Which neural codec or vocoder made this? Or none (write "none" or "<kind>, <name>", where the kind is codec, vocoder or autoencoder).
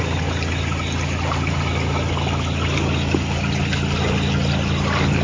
none